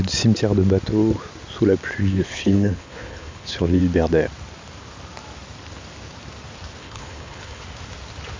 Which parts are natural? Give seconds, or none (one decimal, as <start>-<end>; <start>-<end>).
0.0-2.0; 3.8-6.8; 7.6-8.4

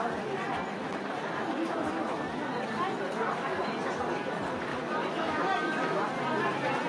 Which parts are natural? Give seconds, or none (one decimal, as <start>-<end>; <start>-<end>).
0.0-0.7; 1.9-4.7; 6.0-6.9

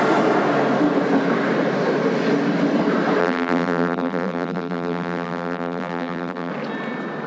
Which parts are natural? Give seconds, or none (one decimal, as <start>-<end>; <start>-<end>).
0.0-3.2; 6.5-7.3

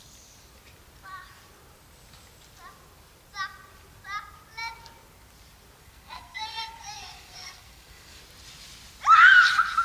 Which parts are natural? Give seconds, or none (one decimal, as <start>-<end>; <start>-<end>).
0.0-5.8; 8.2-9.8

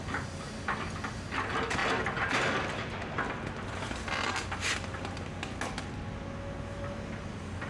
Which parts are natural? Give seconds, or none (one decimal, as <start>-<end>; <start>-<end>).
0.0-7.7

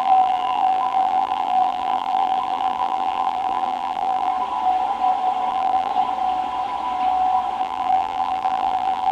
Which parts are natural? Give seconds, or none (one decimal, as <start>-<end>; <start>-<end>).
4.3-5.5; 5.9-7.6

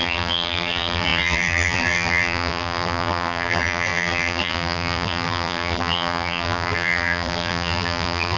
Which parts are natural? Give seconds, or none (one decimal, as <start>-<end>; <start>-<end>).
none